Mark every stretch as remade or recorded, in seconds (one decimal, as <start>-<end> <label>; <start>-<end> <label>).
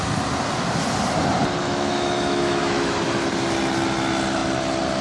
0.0-1.6 recorded; 1.6-3.0 remade; 3.0-5.0 recorded